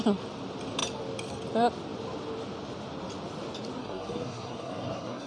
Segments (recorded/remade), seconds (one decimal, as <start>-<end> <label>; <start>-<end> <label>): 0.0-3.8 recorded; 3.8-5.3 remade